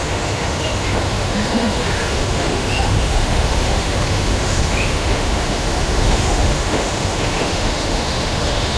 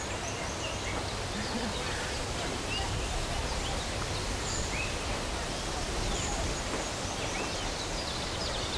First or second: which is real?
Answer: second